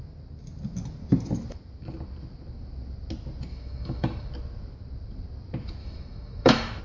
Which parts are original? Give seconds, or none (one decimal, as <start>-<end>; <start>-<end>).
0.0-3.5; 4.3-5.8